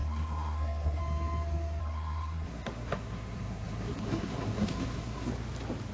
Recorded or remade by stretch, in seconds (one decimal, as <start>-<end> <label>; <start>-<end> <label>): 0.0-1.0 remade; 1.0-1.8 recorded; 1.8-5.3 remade; 5.3-5.9 recorded